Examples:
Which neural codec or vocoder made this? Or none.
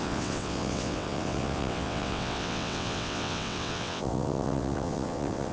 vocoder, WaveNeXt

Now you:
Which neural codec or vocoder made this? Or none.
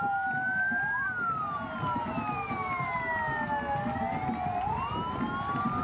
none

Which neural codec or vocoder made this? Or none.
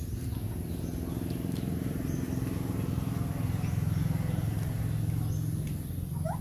none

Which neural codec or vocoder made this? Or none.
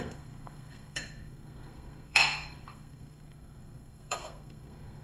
codec, SNAC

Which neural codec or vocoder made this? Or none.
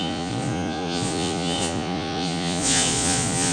vocoder, Vocos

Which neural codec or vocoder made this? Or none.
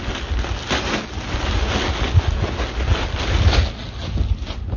none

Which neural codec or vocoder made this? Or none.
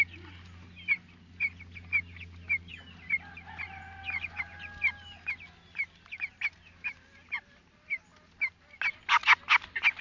none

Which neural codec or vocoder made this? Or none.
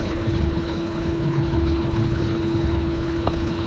codec, HILCodec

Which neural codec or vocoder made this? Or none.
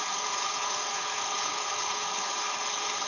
codec, HILCodec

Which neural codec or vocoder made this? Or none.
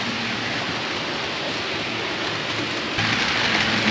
none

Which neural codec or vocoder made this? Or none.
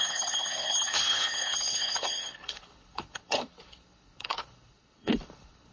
codec, HILCodec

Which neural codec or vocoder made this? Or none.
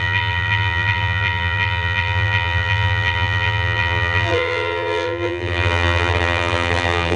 vocoder, BigVGAN v2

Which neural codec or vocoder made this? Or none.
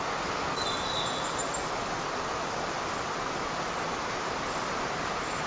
none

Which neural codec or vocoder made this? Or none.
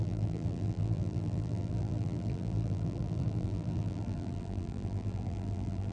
vocoder, BigVGAN v2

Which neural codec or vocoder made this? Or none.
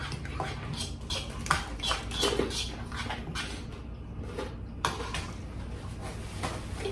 none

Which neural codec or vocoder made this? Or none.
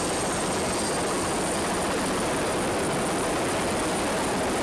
none